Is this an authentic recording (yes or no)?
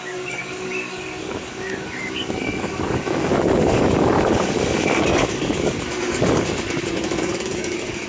no